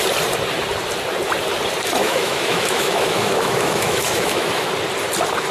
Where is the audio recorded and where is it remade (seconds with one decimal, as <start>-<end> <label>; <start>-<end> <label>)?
0.0-2.0 recorded; 2.0-4.7 remade; 4.7-5.5 recorded